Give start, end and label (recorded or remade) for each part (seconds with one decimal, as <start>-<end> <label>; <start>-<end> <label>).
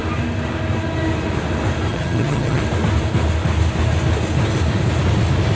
0.0-1.9 recorded; 1.9-2.6 remade; 2.6-5.6 recorded